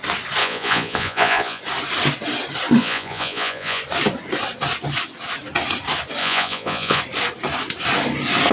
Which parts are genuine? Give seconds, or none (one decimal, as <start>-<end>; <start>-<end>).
0.0-0.4; 1.6-2.8; 3.8-6.2; 7.0-8.5